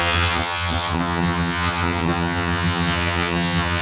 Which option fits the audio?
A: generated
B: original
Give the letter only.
A